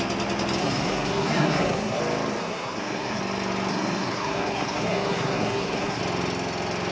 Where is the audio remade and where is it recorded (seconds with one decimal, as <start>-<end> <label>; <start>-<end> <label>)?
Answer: 0.0-0.6 recorded; 0.6-2.0 remade; 2.0-2.4 recorded; 2.4-3.2 remade; 3.2-3.7 recorded; 3.7-6.0 remade; 6.0-6.9 recorded